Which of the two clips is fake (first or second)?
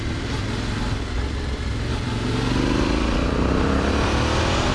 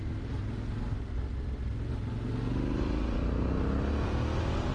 first